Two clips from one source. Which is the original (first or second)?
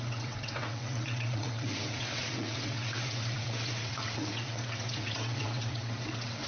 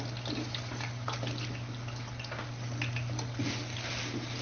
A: second